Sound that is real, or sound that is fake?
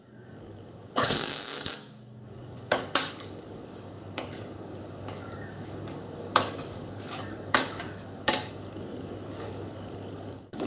fake